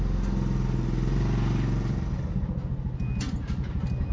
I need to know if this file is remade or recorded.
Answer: recorded